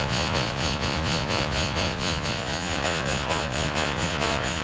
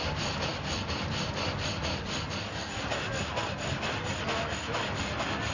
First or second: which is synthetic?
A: first